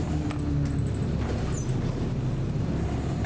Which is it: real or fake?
real